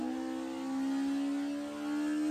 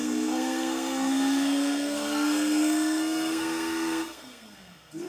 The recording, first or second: first